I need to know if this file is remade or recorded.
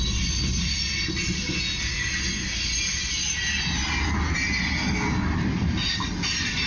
recorded